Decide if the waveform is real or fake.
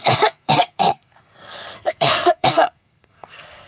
fake